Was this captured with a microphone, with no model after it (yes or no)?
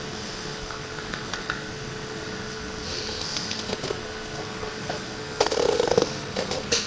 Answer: no